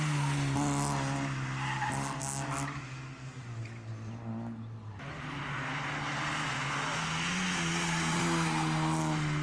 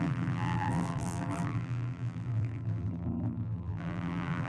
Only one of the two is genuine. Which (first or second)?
first